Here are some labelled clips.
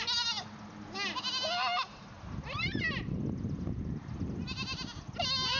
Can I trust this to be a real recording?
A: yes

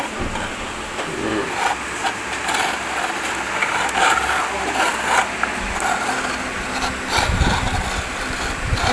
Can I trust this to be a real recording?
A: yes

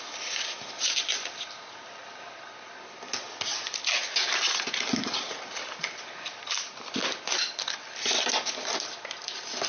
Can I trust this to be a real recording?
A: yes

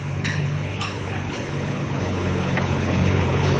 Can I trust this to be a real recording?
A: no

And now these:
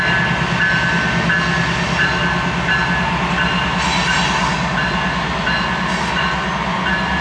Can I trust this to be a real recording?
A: yes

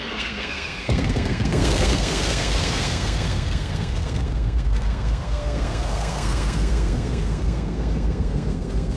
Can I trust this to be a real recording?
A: no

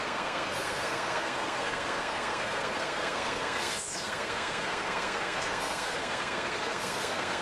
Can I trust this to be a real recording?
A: no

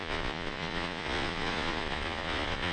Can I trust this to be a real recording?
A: no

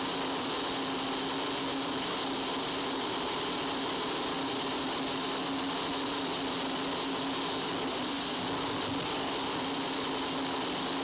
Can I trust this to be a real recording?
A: yes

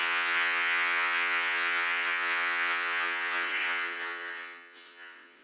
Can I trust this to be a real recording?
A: no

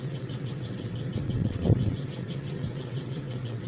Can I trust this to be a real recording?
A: no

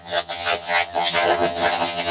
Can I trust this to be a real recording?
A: no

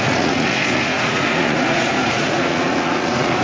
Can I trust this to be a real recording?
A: no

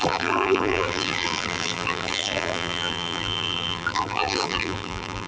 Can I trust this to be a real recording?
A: no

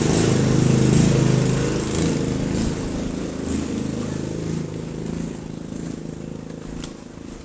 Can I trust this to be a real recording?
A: yes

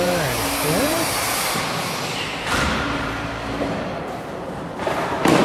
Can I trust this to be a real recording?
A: no